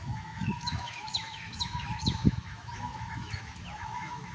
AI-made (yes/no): yes